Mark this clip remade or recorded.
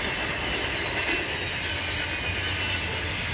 recorded